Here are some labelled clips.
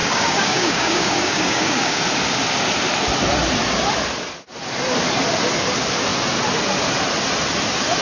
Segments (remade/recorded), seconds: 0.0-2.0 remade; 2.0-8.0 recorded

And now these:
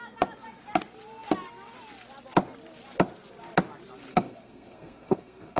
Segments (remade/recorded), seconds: 0.0-4.1 recorded; 4.1-5.6 remade

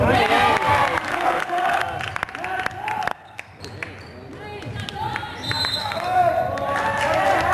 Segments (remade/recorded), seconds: 0.0-1.1 recorded; 1.1-1.8 remade; 1.8-3.1 recorded; 3.1-3.6 remade; 3.6-5.8 recorded; 5.8-6.3 remade; 6.3-7.5 recorded

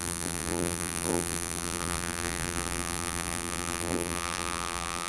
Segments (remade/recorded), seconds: 0.0-5.1 remade